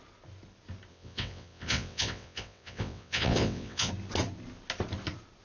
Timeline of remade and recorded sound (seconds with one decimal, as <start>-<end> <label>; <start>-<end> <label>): 0.0-0.9 recorded; 0.9-3.9 remade; 3.9-5.4 recorded